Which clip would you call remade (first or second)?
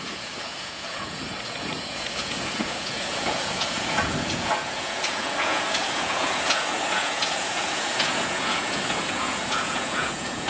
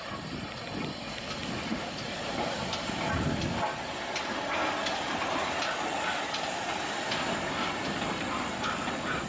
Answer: first